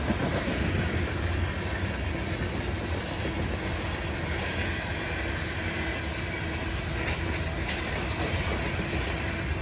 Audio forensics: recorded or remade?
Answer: recorded